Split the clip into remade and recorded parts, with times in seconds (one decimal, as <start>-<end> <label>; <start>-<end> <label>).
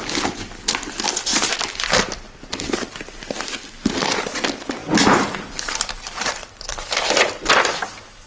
0.0-4.8 recorded; 4.8-7.2 remade; 7.2-8.3 recorded